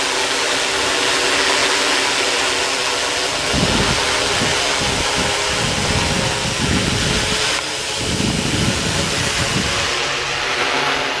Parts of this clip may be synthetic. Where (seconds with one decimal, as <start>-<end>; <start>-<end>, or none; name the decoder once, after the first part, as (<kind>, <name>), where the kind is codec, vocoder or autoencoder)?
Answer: none